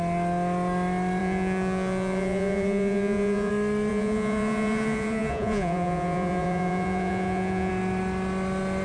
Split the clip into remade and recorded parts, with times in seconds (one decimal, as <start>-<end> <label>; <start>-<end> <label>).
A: 0.0-1.2 recorded; 1.2-3.5 remade; 3.5-3.9 recorded; 3.9-7.7 remade; 7.7-8.8 recorded